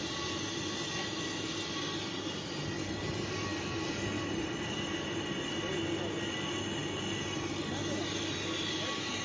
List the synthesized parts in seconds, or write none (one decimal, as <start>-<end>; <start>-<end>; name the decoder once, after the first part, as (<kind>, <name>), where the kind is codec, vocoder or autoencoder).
none

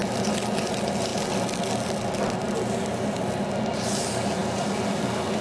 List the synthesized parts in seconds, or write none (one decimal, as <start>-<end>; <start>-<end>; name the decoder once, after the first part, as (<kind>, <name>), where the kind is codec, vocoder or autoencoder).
none

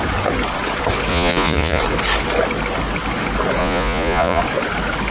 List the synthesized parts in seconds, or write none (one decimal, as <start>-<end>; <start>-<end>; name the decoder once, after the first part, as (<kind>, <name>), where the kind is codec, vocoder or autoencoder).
1.1-1.8 (vocoder, Vocos); 3.6-4.4

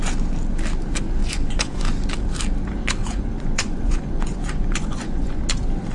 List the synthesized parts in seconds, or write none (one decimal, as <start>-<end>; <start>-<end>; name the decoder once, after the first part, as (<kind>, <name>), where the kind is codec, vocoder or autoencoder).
1.2-1.8 (vocoder, Vocos); 3.0-5.4